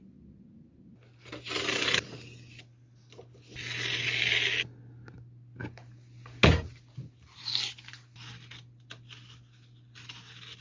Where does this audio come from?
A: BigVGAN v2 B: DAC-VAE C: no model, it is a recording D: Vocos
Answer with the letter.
C